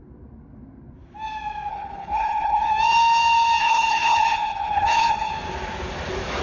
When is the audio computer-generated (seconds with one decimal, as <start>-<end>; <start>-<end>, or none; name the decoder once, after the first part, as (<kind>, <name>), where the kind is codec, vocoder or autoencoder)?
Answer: 1.7-2.7 (codec, HILCodec); 3.6-5.3